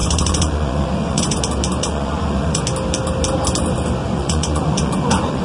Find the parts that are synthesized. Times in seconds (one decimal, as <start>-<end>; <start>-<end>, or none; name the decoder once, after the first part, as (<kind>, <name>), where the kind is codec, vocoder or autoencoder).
0.0-1.4 (vocoder, Vocos); 1.8-2.6; 4.0-5.4